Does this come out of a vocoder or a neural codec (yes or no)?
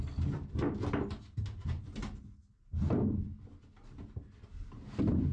no